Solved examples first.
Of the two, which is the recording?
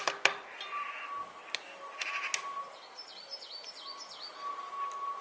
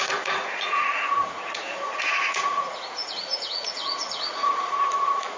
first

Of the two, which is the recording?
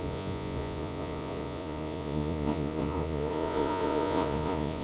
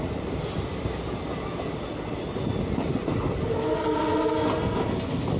second